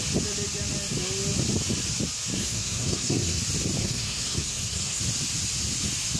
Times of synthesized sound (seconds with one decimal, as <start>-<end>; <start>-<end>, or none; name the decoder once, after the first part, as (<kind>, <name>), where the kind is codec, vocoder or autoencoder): 2.4-3.4 (codec, SNAC); 3.8-5.0